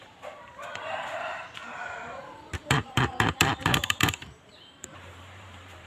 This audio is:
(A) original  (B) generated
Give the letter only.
B